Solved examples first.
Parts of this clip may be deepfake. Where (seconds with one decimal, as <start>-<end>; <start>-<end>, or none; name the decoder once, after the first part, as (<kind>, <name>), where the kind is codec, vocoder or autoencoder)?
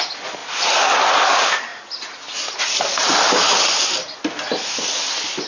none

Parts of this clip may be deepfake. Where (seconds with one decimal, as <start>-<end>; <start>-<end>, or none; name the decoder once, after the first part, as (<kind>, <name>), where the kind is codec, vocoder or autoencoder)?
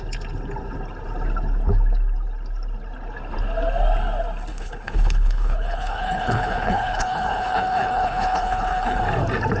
4.5-9.0 (codec, HILCodec)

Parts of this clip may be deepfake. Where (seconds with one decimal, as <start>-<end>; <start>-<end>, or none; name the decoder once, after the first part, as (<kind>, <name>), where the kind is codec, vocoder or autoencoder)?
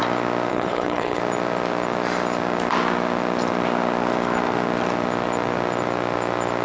0.5-1.2 (codec, HILCodec)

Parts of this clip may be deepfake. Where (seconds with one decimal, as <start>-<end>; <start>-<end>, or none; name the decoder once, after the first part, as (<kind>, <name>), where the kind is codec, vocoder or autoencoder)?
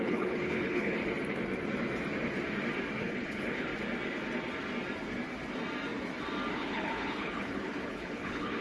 0.0-1.0 (codec, HILCodec); 3.0-3.7; 6.5-8.6